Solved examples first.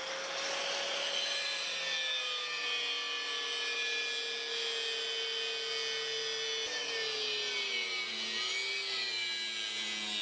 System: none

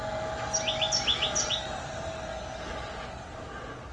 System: none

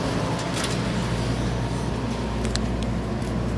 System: none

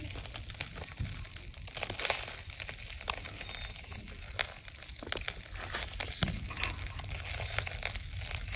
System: none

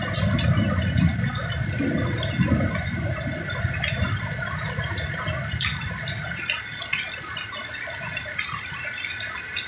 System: none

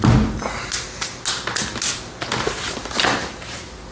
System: none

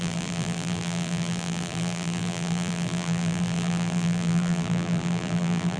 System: vocoder, BigVGAN v2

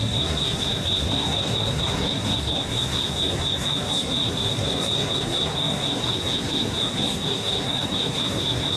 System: codec, SNAC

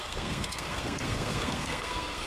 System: codec, SNAC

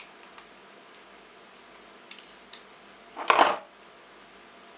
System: none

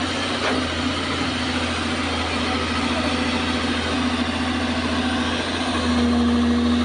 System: none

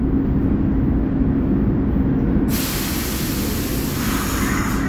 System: none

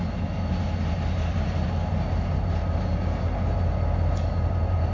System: none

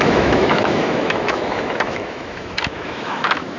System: autoencoder, DAC-VAE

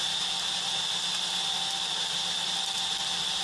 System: vocoder, BigVGAN v2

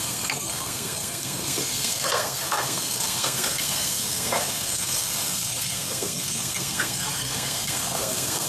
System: codec, SNAC